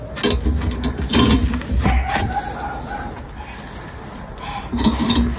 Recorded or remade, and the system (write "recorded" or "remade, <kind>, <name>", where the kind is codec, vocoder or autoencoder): recorded